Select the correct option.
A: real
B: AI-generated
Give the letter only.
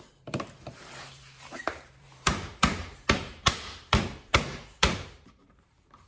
B